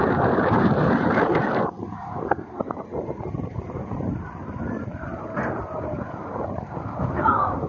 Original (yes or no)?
no